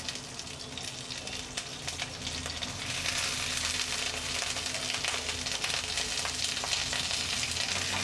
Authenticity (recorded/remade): recorded